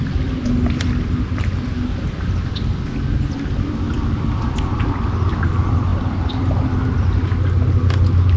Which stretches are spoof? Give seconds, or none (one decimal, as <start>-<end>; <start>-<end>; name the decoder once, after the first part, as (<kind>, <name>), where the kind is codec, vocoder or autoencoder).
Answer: none